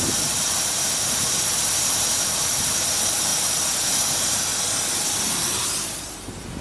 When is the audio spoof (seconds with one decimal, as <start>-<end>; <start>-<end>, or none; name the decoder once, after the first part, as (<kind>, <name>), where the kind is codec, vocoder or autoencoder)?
0.0-3.3 (vocoder, BigVGAN v2); 4.1-4.5; 5.2-6.6